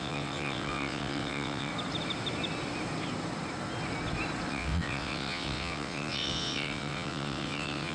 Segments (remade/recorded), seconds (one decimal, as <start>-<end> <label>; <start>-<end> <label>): 0.0-1.7 remade; 1.7-4.5 recorded; 4.5-7.9 remade